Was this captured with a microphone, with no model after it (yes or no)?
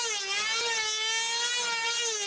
yes